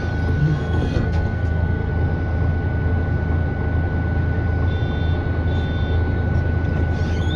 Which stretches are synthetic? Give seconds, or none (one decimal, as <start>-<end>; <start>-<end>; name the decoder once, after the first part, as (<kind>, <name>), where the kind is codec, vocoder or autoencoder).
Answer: 0.4-1.9 (codec, SNAC)